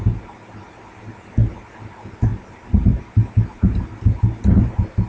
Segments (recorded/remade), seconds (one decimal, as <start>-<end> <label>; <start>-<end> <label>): 0.0-5.1 recorded